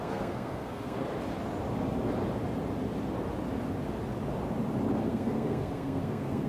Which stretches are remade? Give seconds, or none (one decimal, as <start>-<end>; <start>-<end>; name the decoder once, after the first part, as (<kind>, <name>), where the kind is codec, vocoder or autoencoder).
0.0-1.1 (codec, SNAC); 5.0-6.5

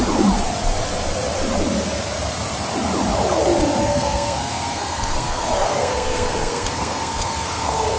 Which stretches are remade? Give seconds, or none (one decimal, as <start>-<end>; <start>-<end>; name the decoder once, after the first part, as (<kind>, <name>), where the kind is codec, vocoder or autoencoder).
3.8-8.0 (codec, SNAC)

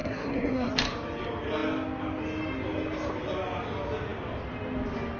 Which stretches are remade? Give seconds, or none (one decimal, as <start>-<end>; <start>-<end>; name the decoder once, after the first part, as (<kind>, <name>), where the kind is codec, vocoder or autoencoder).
0.0-0.7 (codec, SNAC)